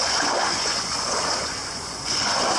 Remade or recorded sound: remade